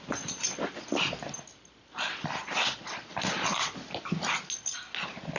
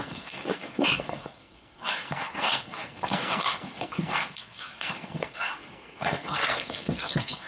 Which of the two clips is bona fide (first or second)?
first